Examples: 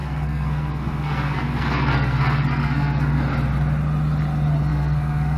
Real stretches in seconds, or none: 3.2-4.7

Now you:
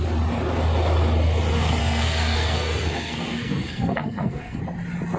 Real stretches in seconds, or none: 0.0-1.8; 4.6-5.2

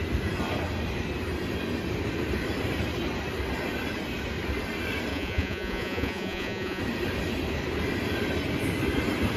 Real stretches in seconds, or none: 0.0-5.1; 6.8-9.4

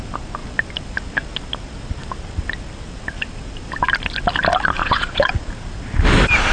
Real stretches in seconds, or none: 0.0-4.8; 5.5-6.5

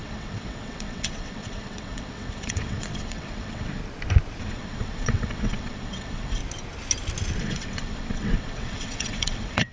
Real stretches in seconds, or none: 3.8-4.4; 6.4-7.4